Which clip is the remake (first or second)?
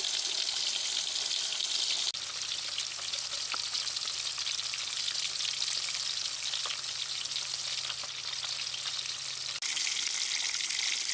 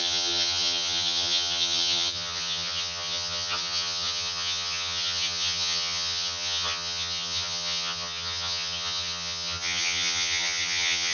second